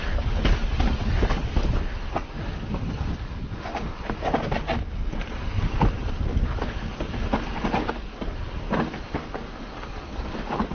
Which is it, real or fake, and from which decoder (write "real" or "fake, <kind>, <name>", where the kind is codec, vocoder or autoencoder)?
real